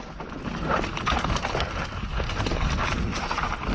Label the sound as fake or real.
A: real